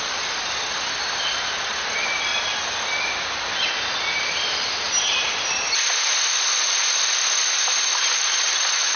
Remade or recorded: recorded